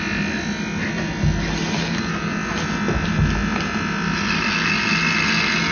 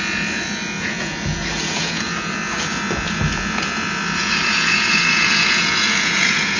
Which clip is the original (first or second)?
first